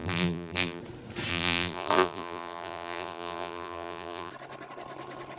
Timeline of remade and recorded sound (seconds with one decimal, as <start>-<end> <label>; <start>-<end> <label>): 0.0-0.8 remade; 0.8-1.3 recorded; 1.3-4.3 remade; 4.3-5.4 recorded